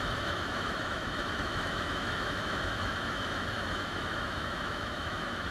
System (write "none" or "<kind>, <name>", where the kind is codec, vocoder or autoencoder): autoencoder, DAC-VAE